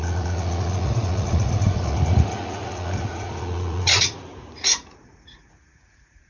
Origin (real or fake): fake